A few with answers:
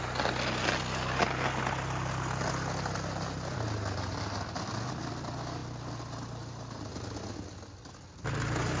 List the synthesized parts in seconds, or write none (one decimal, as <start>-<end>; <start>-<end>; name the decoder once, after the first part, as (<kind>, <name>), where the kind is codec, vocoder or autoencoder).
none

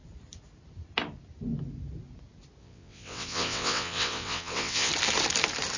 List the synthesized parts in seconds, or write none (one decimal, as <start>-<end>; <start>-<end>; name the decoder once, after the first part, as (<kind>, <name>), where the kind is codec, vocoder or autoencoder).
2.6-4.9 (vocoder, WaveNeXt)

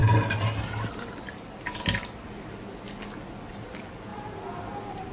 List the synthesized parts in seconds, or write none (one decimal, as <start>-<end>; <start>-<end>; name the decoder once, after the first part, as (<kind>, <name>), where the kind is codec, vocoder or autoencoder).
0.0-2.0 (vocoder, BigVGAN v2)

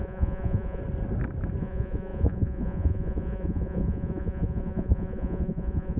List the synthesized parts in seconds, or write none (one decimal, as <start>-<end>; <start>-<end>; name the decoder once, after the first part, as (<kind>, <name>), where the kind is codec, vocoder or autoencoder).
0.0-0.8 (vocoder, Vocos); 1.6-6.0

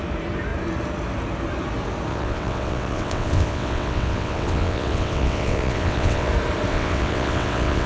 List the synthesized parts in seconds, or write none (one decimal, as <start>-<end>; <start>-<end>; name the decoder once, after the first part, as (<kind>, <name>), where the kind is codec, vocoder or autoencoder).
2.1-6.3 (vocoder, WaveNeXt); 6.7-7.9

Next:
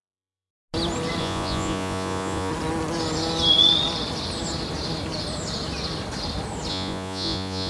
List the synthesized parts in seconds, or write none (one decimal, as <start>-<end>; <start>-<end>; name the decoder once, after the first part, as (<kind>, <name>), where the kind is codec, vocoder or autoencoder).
0.0-0.5 (vocoder, Vocos); 1.2-2.5; 6.7-7.7

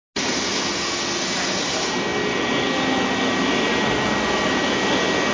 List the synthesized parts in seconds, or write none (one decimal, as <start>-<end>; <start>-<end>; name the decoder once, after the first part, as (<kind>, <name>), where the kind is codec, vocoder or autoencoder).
none